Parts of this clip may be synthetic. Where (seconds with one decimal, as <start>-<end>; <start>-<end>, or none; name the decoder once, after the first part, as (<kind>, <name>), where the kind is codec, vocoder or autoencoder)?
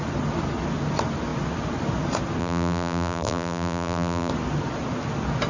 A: 2.4-4.3 (vocoder, BigVGAN v2)